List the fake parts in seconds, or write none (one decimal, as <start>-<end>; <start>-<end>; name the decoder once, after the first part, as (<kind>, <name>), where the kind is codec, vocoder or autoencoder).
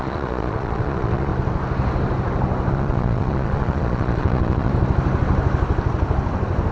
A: 0.0-1.3 (vocoder, Vocos); 2.7-4.7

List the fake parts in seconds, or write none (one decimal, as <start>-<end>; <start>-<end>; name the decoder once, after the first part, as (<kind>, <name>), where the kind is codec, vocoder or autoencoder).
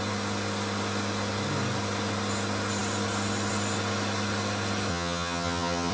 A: 4.9-5.9 (vocoder, HiFi-GAN)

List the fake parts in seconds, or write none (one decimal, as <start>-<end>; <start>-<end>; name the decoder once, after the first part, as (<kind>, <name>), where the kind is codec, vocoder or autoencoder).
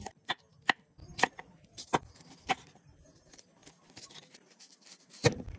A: none